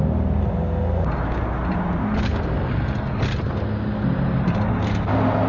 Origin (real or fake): real